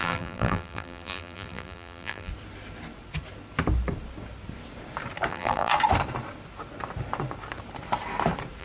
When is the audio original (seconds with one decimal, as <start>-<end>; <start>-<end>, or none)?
2.3-5.3; 5.7-8.6